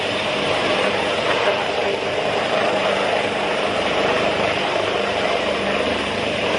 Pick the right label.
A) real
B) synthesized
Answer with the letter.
B